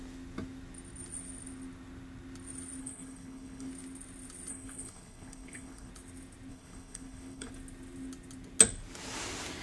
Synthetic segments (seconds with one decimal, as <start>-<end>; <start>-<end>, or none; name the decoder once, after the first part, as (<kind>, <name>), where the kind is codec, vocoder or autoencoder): 2.8-3.7 (codec, HILCodec); 4.5-5.9; 6.5-7.5